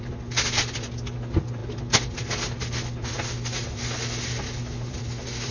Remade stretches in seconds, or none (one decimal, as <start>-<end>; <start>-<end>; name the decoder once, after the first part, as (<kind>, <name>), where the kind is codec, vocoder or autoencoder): none